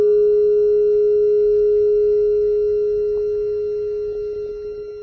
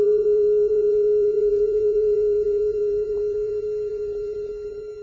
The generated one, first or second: second